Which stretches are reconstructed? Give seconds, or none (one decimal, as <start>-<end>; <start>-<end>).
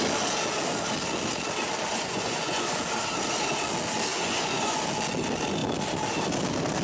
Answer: 1.9-2.8; 4.1-4.8